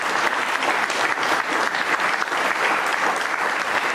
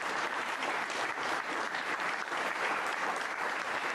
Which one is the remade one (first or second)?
second